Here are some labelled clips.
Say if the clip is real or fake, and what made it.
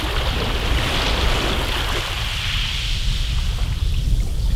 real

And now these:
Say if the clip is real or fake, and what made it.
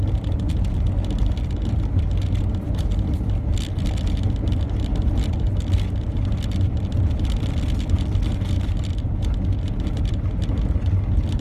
real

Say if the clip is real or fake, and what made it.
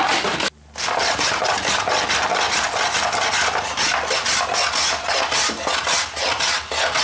real